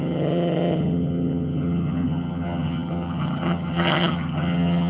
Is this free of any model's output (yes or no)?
no